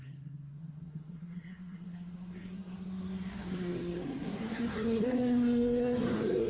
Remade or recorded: remade